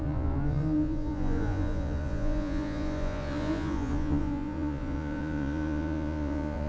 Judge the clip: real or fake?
fake